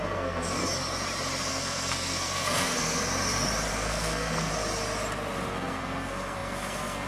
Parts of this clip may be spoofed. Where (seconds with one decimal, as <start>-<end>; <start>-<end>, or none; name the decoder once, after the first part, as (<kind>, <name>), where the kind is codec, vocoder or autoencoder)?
0.0-0.6 (codec, SNAC); 1.5-3.0; 3.7-4.5; 5.5-7.1